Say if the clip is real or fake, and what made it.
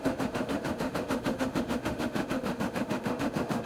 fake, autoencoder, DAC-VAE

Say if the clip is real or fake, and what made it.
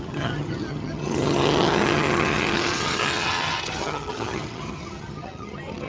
fake, vocoder, HiFi-GAN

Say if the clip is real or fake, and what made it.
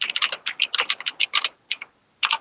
real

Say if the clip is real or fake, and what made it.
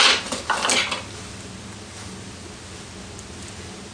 real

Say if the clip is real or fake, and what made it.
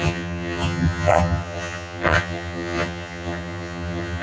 fake, vocoder, HiFi-GAN